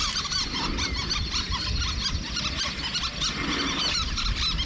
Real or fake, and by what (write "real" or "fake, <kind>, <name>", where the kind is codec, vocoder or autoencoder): real